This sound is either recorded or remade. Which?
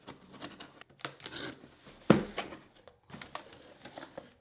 recorded